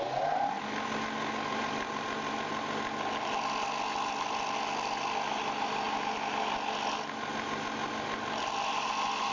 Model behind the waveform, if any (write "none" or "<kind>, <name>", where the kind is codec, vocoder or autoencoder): none